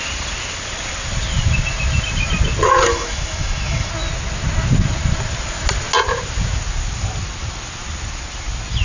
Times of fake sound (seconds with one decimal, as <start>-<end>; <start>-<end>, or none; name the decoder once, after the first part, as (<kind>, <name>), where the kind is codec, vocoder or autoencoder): 2.9-3.9 (autoencoder, DAC-VAE)

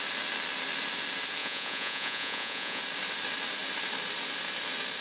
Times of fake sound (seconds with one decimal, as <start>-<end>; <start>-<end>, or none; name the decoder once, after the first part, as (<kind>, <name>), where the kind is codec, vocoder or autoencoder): 1.4-2.8 (vocoder, Vocos)

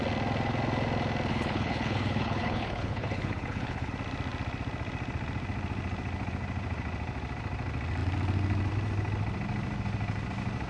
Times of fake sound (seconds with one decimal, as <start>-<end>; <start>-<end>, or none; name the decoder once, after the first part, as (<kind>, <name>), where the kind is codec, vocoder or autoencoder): 1.3-3.9 (codec, HILCodec)

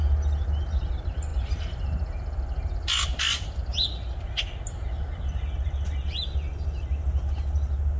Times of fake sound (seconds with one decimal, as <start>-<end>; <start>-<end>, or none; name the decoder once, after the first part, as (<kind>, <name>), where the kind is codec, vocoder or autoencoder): none

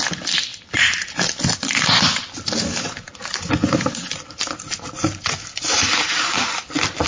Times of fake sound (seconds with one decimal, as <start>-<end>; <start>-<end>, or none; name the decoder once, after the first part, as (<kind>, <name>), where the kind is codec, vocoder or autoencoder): 0.0-7.1 (vocoder, BigVGAN v2)